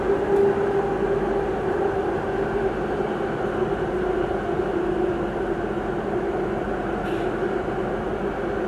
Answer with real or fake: real